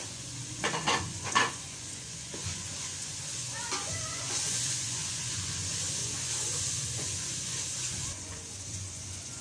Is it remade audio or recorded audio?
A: remade